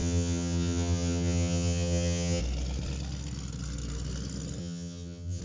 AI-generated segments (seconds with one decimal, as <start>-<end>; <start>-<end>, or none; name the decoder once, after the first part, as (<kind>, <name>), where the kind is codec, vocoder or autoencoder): 0.0-2.4 (vocoder, HiFi-GAN); 4.6-5.4